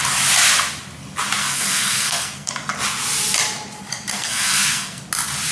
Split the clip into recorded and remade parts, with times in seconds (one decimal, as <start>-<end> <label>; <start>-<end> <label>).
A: 0.0-1.4 recorded; 1.4-2.5 remade; 2.5-4.1 recorded; 4.1-5.0 remade; 5.0-5.5 recorded